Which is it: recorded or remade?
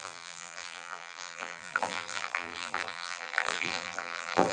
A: remade